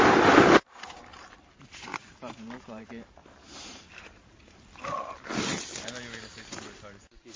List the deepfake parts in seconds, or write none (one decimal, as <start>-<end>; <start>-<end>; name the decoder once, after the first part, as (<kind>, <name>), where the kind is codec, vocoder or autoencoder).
1.1-4.4 (vocoder, BigVGAN v2)

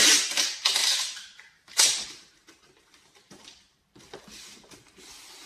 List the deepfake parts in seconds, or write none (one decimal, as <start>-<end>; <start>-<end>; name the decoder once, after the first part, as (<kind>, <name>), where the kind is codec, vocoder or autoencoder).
0.8-4.0 (vocoder, BigVGAN v2)

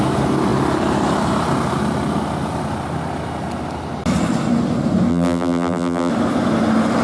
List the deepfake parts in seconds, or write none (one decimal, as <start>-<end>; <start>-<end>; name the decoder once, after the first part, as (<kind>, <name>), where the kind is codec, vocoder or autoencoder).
5.1-6.1 (vocoder, BigVGAN v2)

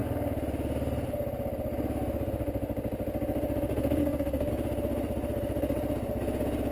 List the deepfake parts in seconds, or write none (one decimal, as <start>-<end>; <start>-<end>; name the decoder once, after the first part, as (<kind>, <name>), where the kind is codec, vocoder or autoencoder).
4.0-4.5 (codec, SNAC)

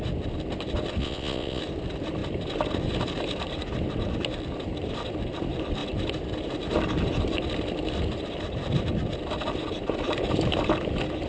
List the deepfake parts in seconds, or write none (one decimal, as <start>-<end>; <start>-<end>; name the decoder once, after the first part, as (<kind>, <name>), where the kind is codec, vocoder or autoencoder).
1.0-1.6 (vocoder, Vocos)

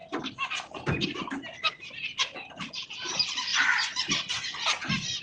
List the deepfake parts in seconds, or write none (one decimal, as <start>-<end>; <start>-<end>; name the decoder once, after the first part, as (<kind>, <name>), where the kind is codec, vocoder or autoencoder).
none